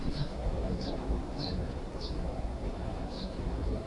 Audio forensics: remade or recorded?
remade